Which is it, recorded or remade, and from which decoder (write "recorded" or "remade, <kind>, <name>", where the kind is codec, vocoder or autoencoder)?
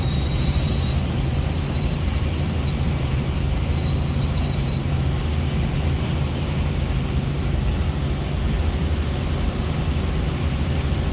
remade, vocoder, BigVGAN v2